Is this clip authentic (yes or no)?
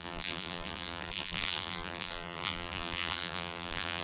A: no